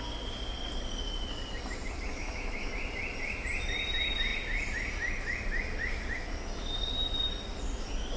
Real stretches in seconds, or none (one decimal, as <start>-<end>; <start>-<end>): 0.0-2.2; 2.7-8.2